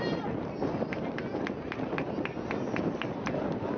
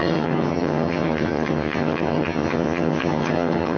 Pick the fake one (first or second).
second